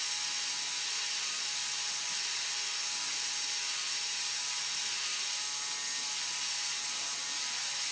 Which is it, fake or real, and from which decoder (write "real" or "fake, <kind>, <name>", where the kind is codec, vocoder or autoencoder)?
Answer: real